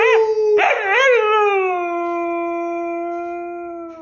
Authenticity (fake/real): real